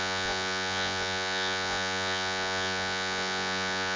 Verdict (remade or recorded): remade